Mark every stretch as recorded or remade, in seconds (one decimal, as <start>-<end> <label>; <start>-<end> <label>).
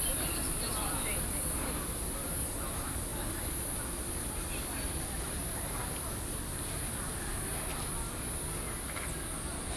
0.0-9.8 recorded